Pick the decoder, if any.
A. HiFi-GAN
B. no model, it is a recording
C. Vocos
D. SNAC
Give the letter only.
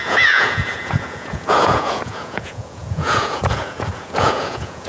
C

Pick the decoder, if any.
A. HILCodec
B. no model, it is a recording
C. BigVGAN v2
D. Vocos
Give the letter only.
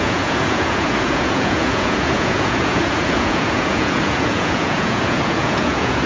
D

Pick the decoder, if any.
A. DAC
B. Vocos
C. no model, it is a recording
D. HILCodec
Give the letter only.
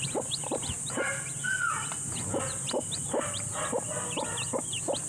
C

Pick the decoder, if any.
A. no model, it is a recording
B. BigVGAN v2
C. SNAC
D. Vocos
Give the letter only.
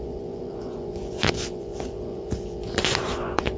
D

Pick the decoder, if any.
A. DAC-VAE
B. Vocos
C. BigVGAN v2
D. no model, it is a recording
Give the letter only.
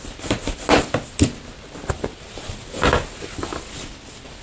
D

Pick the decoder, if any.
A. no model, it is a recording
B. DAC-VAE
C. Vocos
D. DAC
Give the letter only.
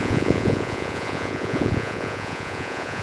C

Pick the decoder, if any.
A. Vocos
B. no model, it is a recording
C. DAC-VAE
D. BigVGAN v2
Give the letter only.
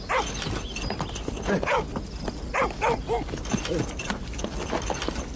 B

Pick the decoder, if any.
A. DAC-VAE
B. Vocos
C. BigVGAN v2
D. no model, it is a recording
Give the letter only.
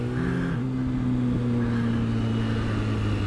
D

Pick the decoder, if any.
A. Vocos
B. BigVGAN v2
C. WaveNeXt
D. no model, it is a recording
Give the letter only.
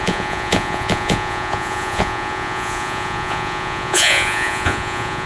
A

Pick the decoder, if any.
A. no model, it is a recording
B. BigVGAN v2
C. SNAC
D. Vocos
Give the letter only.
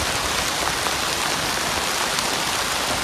A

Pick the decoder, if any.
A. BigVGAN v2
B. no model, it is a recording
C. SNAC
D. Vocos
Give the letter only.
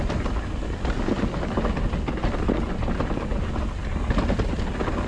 B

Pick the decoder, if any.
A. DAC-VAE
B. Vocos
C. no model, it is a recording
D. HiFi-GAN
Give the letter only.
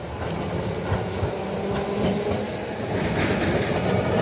C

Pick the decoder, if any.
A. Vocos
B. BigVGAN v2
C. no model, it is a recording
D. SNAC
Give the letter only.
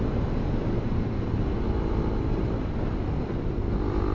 C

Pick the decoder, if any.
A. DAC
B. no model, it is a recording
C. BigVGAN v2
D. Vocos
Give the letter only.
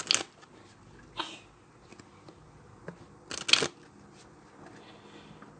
B